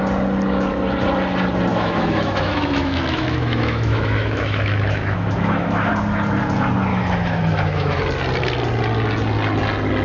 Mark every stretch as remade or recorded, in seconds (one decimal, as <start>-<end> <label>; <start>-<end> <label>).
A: 0.0-1.7 recorded; 1.7-5.9 remade; 5.9-6.9 recorded; 6.9-8.0 remade; 8.0-10.0 recorded